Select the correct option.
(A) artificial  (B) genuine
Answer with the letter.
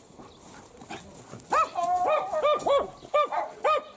B